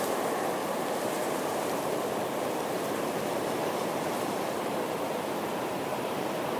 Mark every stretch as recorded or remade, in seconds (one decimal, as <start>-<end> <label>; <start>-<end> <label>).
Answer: 0.0-0.6 remade; 0.6-1.5 recorded; 1.5-6.6 remade